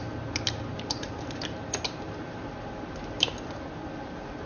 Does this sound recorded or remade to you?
recorded